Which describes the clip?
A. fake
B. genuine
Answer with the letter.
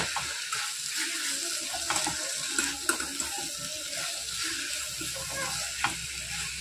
B